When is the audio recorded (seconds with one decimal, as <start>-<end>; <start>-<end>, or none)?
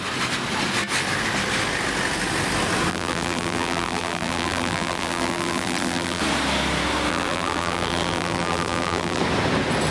0.0-2.9; 6.2-7.1; 9.2-9.9